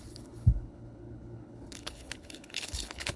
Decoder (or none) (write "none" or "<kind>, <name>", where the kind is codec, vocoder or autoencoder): codec, HILCodec